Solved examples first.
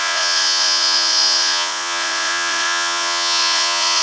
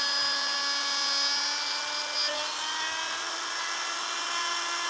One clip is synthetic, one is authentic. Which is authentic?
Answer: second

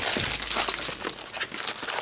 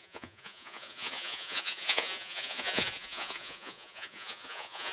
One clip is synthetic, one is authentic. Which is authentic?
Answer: first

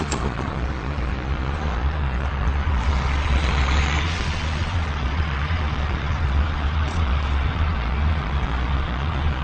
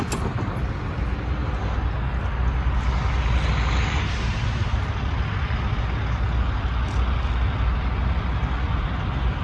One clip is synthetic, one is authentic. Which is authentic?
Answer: second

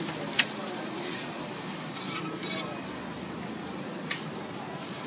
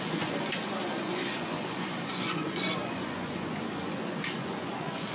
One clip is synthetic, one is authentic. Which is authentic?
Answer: first